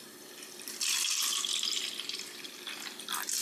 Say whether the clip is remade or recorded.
recorded